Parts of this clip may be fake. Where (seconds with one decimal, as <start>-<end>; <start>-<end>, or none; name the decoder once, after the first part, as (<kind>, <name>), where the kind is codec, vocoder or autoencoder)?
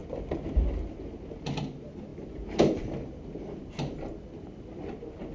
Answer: none